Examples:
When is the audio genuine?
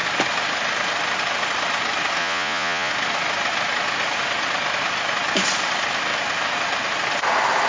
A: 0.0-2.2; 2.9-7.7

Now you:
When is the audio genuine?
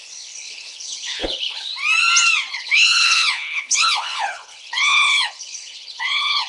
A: 1.7-2.5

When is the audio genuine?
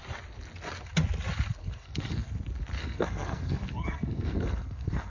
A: 0.0-1.6; 2.3-2.8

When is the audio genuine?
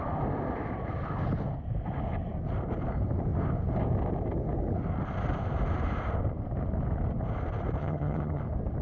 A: 0.0-7.8; 8.4-8.8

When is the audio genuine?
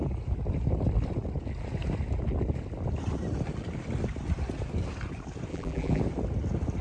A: 0.0-5.5; 6.0-6.8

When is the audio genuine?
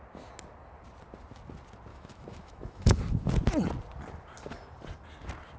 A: 0.0-1.9; 3.0-5.6